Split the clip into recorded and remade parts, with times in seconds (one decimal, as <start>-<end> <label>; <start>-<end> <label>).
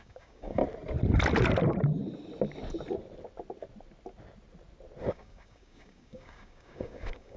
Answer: 0.0-0.6 remade; 0.6-5.0 recorded; 5.0-7.4 remade